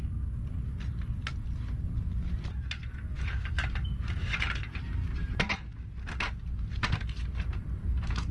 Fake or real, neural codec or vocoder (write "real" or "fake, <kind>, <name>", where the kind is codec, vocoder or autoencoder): real